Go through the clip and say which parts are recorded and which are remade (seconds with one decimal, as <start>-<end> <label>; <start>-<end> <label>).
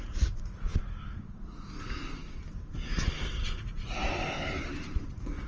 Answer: 0.0-0.7 remade; 0.7-3.2 recorded; 3.2-4.0 remade; 4.0-5.1 recorded; 5.1-5.5 remade